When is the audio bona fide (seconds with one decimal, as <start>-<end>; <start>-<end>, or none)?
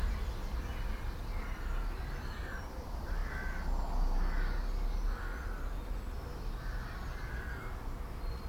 0.0-8.5